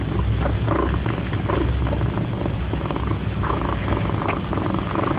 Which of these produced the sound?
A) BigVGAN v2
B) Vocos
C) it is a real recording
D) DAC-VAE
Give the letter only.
C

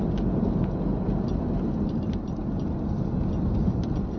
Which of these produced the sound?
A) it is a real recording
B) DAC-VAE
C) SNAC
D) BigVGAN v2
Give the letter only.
A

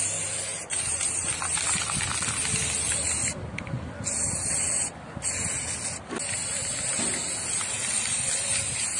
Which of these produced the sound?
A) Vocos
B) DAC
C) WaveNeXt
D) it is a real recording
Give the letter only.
D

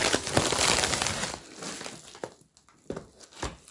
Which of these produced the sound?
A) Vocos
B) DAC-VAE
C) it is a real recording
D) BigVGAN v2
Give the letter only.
C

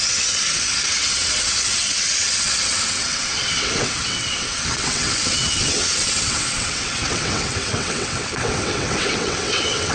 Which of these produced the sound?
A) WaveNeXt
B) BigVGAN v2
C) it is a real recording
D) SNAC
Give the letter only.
A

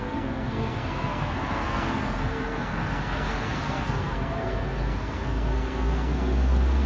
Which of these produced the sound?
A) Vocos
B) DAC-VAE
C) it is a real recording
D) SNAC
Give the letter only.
D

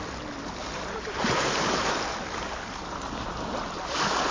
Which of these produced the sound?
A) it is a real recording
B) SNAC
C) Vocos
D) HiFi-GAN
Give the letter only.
A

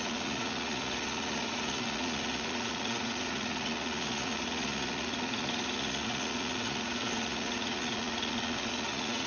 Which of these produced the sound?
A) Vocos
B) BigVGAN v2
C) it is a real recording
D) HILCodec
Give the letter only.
A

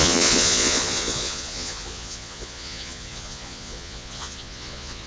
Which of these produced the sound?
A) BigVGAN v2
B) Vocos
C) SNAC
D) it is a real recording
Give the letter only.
B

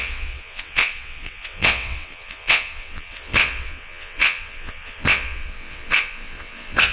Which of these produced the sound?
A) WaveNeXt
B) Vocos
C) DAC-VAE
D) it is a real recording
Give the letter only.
A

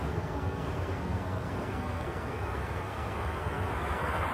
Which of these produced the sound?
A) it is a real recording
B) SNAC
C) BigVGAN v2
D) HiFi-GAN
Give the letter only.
B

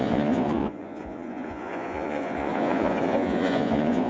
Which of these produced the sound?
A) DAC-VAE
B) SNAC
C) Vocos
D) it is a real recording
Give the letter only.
C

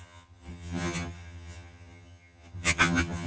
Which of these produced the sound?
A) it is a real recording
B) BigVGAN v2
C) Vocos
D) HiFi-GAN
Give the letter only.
D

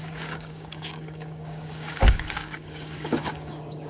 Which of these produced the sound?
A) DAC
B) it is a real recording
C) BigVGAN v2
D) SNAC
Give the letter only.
A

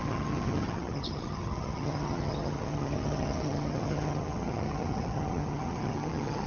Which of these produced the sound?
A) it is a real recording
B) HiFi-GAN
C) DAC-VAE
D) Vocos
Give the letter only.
B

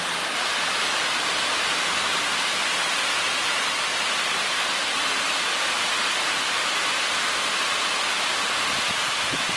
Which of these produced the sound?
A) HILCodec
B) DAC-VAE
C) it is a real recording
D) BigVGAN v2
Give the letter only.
C